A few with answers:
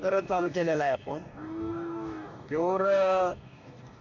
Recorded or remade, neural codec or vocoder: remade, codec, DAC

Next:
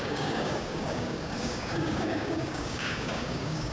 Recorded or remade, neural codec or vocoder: remade, codec, DAC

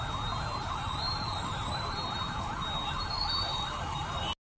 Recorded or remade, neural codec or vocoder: recorded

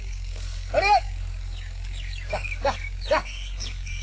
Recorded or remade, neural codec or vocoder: remade, codec, DAC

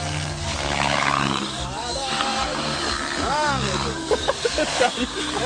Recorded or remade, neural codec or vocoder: remade, codec, DAC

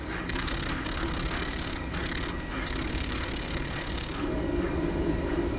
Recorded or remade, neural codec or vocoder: remade, codec, DAC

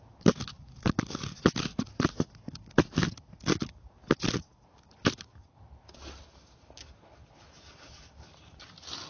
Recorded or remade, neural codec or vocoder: recorded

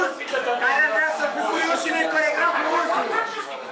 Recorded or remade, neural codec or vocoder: remade, codec, DAC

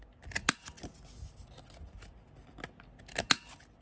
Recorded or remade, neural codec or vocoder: recorded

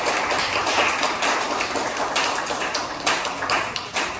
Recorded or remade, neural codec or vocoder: recorded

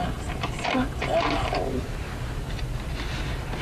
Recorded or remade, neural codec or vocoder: recorded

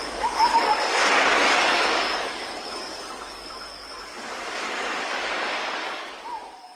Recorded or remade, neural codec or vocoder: remade, codec, DAC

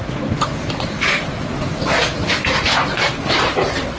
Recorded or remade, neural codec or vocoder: recorded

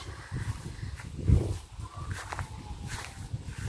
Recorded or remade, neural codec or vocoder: recorded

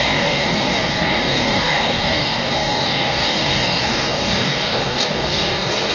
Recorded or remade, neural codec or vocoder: remade, codec, DAC